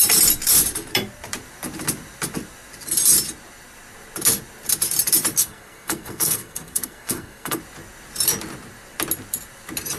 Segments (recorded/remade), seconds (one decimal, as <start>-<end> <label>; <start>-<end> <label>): 0.0-5.4 recorded; 5.4-7.6 remade; 7.6-10.0 recorded